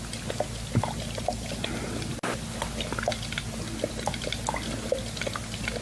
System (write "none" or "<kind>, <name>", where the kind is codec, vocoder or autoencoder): none